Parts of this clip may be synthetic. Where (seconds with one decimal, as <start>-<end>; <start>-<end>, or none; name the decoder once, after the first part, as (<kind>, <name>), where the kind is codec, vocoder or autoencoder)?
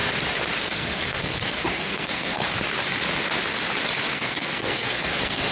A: 0.6-2.4 (codec, SNAC); 4.1-5.5